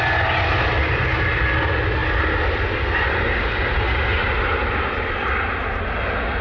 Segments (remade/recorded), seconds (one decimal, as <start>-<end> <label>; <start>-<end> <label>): 0.0-6.4 recorded